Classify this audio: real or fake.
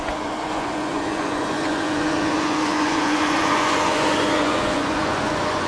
fake